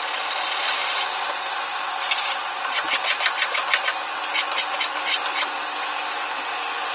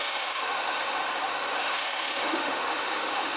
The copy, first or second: second